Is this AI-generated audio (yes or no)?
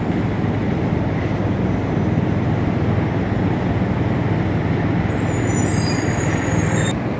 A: no